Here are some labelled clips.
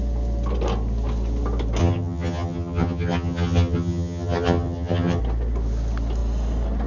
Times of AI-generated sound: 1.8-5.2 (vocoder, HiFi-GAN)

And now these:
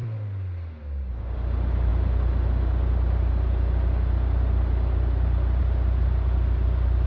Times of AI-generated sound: none

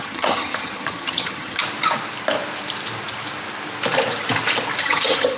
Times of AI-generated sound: 0.0-1.6 (vocoder, HiFi-GAN); 4.8-5.4

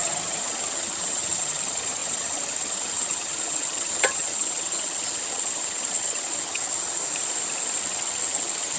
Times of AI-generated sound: 0.0-7.0 (vocoder, HiFi-GAN); 7.8-8.8

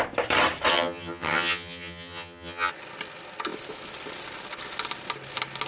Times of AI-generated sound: 0.7-2.7 (vocoder, HiFi-GAN)

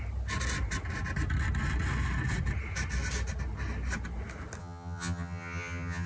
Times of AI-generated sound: 4.6-6.1 (vocoder, HiFi-GAN)